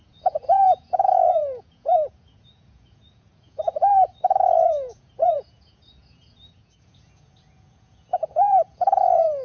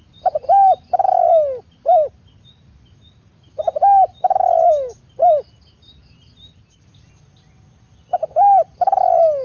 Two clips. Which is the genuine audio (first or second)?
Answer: second